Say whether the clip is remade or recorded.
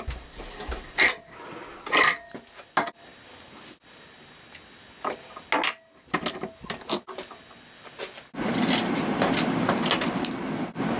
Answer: recorded